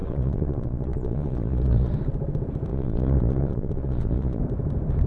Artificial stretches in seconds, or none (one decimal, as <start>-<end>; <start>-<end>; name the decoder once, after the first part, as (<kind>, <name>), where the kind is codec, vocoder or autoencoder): 0.0-1.9 (vocoder, Vocos); 2.7-4.4